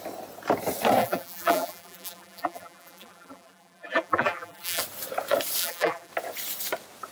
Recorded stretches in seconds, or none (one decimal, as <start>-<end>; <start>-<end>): 0.0-1.0; 4.8-5.6; 6.1-7.1